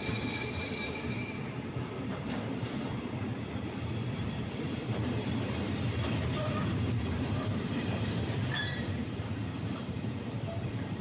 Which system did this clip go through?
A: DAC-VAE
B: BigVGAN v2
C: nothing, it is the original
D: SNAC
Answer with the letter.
B